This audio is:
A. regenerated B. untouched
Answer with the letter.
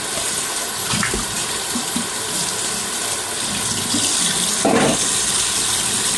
B